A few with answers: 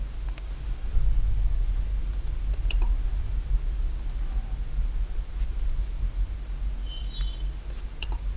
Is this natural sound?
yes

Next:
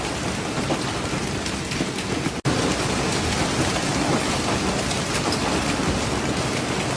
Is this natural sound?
yes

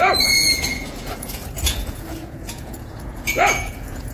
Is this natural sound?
no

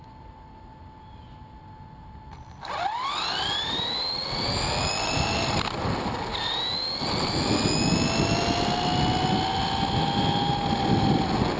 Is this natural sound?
yes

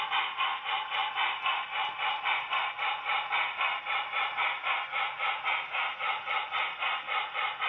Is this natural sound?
yes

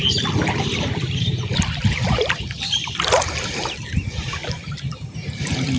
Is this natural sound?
yes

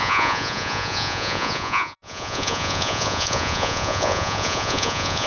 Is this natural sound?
no